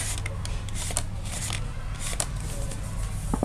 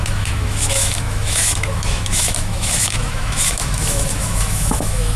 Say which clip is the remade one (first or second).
second